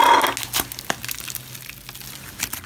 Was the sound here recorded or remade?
recorded